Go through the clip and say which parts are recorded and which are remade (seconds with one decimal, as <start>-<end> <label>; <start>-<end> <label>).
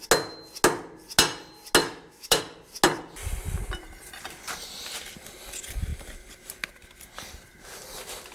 0.0-1.8 recorded; 1.8-2.4 remade; 2.4-8.3 recorded